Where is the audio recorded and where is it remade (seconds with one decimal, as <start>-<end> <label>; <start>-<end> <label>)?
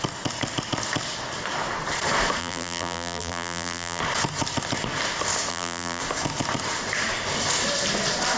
0.0-2.4 recorded; 2.4-4.0 remade; 4.0-5.5 recorded; 5.5-6.0 remade; 6.0-8.4 recorded